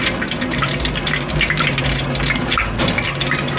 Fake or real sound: real